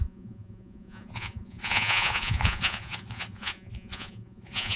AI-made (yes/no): yes